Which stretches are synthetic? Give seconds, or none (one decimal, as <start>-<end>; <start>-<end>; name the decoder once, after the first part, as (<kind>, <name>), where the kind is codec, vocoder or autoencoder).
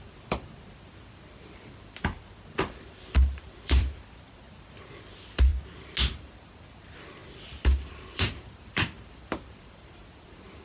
0.0-5.5 (vocoder, BigVGAN v2); 6.2-10.6